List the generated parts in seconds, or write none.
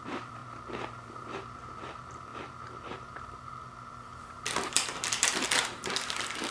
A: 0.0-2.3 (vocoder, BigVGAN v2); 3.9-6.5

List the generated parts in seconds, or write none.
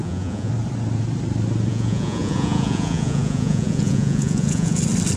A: 0.0-0.5 (vocoder, Vocos); 1.7-4.8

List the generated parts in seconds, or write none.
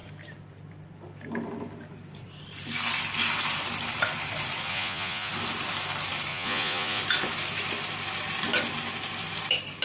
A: 4.7-5.3 (vocoder, Vocos); 6.3-7.0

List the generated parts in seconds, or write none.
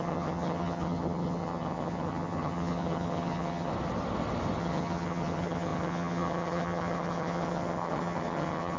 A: 0.0-3.7 (vocoder, HiFi-GAN); 4.6-8.8